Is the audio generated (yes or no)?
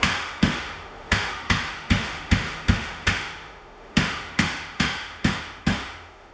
yes